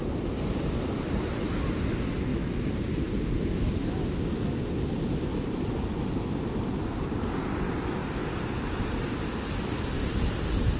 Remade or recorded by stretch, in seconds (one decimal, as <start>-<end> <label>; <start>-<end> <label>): 0.0-10.8 recorded